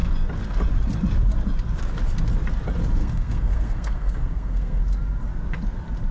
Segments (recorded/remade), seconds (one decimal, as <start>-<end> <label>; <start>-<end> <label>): 0.0-3.0 recorded; 3.0-4.8 remade; 4.8-6.1 recorded